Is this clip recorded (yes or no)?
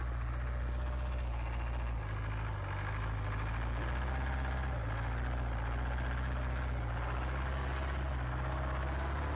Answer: yes